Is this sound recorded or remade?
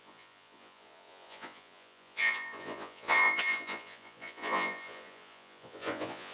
remade